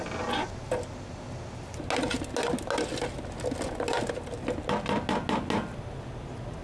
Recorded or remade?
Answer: recorded